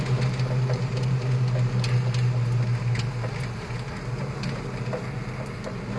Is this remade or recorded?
recorded